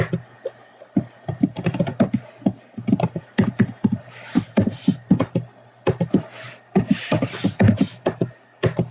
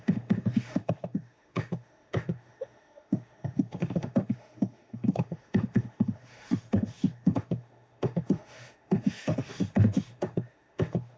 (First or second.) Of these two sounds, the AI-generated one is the second